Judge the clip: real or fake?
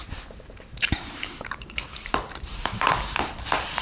fake